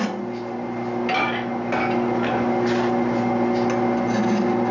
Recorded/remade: recorded